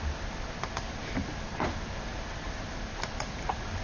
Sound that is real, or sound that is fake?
real